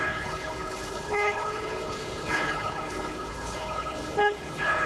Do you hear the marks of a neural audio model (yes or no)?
yes